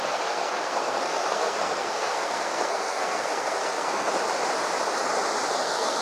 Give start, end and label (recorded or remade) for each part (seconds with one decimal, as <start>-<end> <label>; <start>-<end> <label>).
0.0-4.1 remade; 4.1-5.5 recorded; 5.5-6.0 remade